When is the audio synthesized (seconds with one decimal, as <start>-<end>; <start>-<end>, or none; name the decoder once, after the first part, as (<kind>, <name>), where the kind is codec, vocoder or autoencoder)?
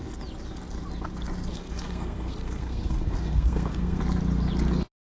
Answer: 1.5-4.0 (codec, SNAC)